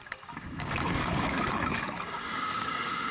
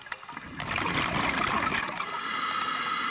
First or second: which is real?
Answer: second